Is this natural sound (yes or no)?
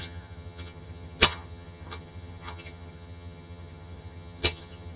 no